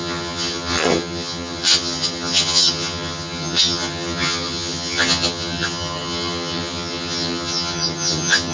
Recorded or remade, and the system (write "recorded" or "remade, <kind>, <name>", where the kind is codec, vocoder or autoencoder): remade, vocoder, HiFi-GAN